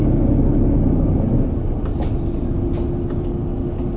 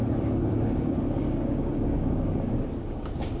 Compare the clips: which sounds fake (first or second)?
second